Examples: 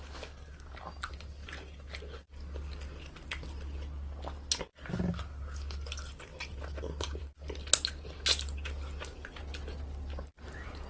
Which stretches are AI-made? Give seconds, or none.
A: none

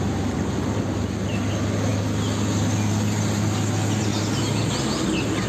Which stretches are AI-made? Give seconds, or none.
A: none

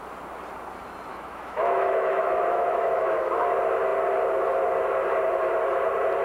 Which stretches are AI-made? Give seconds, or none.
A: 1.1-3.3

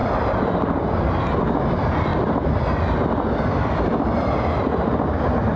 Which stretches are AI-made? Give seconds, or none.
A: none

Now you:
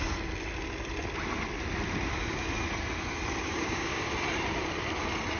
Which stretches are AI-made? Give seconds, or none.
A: 3.4-4.1

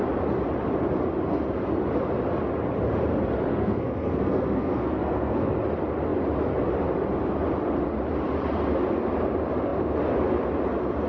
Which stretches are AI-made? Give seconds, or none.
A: 3.5-5.5